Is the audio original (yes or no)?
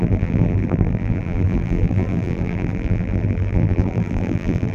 no